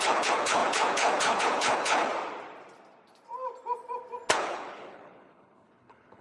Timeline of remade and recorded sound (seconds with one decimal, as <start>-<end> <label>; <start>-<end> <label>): 0.0-2.1 remade; 2.1-4.3 recorded; 4.3-6.2 remade